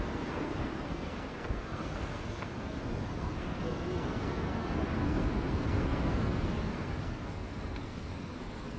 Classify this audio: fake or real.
fake